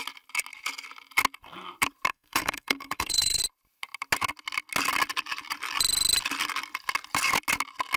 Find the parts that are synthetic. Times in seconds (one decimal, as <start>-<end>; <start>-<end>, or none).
2.1-3.4